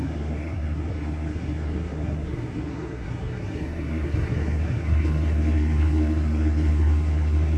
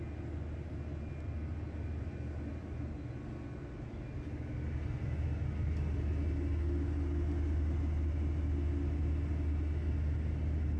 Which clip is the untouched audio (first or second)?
second